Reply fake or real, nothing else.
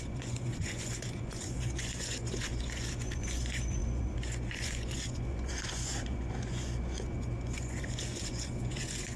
fake